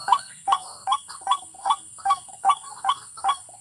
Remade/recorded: remade